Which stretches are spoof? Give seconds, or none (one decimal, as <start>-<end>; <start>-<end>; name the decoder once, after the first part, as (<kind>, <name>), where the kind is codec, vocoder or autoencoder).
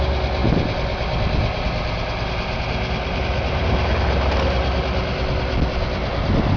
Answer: none